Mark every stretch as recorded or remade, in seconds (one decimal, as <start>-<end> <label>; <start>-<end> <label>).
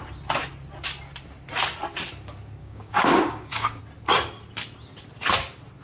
0.0-2.6 recorded; 2.6-3.8 remade; 3.8-5.8 recorded